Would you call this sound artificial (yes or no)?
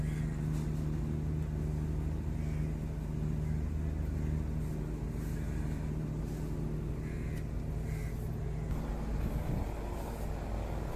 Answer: no